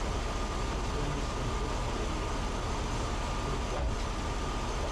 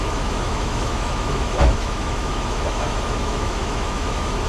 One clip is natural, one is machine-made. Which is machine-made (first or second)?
second